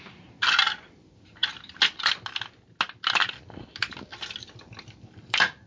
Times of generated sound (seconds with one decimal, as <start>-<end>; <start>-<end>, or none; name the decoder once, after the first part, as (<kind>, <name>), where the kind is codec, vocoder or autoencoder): none